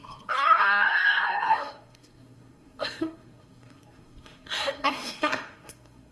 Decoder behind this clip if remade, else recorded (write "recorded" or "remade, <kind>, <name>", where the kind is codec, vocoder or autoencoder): remade, codec, SNAC